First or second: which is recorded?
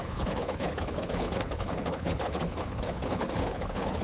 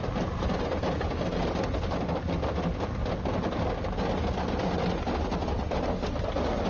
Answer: second